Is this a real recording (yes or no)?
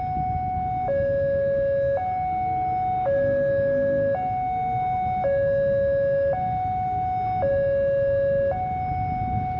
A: yes